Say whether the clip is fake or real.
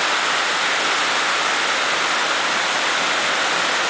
real